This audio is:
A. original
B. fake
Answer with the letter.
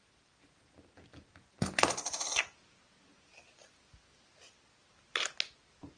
A